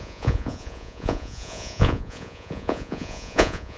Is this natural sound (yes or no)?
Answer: no